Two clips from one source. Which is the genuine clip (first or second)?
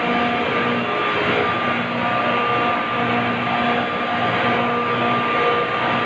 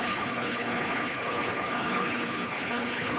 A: first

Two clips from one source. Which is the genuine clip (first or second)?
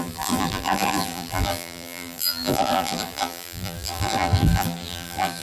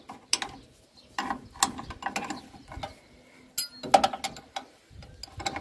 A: second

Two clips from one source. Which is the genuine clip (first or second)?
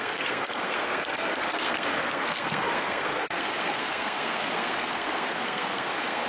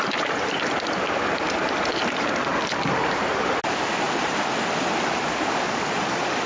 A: second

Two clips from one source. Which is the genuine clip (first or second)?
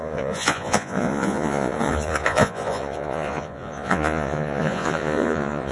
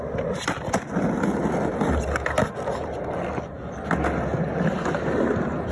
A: second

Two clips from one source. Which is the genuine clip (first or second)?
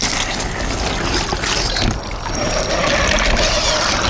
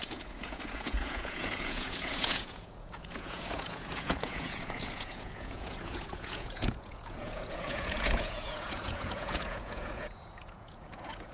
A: first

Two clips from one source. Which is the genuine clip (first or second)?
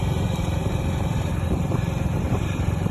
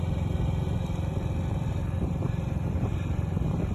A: second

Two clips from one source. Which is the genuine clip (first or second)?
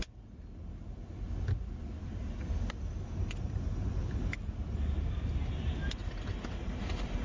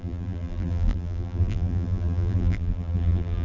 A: first